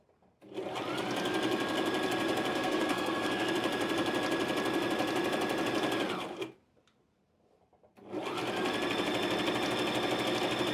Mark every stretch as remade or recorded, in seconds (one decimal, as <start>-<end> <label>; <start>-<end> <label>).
0.0-2.5 recorded; 2.5-3.5 remade; 3.5-10.7 recorded

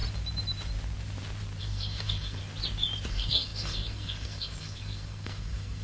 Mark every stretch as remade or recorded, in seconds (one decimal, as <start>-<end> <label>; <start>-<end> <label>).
0.0-1.6 recorded; 1.6-2.4 remade; 2.4-3.1 recorded; 3.1-5.8 remade

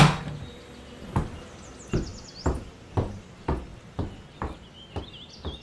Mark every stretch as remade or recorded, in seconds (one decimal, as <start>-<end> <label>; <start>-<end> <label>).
0.0-5.6 recorded

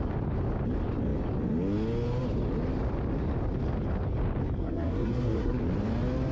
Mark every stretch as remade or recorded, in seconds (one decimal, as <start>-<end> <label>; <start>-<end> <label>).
0.0-4.6 recorded; 4.6-5.6 remade; 5.6-6.3 recorded

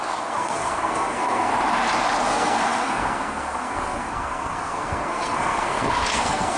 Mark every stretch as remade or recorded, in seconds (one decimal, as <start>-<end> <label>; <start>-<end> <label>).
0.0-1.5 remade; 1.5-2.3 recorded; 2.3-6.6 remade

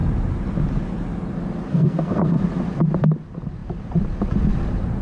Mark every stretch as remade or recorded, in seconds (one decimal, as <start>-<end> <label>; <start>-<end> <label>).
0.0-1.7 recorded; 1.7-2.4 remade; 2.4-5.0 recorded

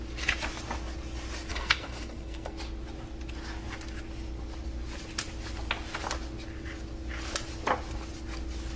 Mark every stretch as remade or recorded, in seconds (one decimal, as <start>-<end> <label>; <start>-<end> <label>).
0.0-1.5 recorded; 1.5-2.6 remade; 2.6-8.8 recorded